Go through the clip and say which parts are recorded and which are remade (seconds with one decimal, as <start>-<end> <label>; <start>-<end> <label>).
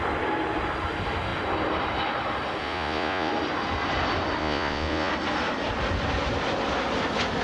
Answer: 0.0-2.6 recorded; 2.6-3.3 remade; 3.3-4.4 recorded; 4.4-5.1 remade; 5.1-7.4 recorded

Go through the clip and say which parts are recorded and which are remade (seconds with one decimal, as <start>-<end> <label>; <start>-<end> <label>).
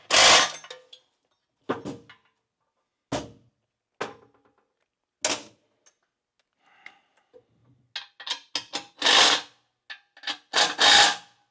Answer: 0.0-11.5 recorded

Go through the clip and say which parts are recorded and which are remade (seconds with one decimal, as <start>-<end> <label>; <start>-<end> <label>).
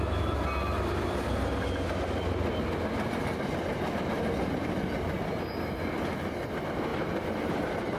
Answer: 0.0-8.0 recorded